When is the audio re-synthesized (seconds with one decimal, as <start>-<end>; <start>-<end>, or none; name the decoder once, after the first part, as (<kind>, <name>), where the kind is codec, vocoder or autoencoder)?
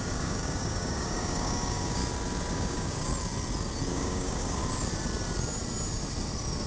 0.0-2.0 (codec, DAC); 2.5-3.1; 3.9-4.6